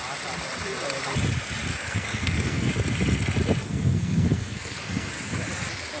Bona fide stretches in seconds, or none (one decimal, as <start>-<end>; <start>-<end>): 0.0-1.7; 2.7-3.6; 5.1-6.0